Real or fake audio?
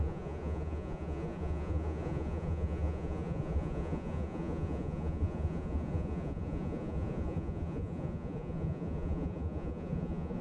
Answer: fake